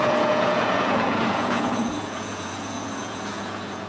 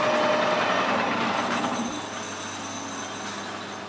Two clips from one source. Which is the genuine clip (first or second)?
second